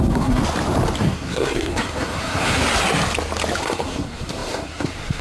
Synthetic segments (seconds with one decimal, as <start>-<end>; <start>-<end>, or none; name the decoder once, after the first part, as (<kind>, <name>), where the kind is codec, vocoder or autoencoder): 0.0-0.4 (codec, SNAC); 1.0-2.6; 3.6-5.2